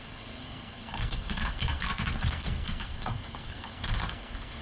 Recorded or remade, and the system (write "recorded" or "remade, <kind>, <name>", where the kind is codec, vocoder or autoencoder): remade, codec, SNAC